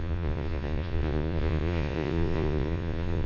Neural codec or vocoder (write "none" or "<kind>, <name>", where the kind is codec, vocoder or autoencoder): vocoder, Vocos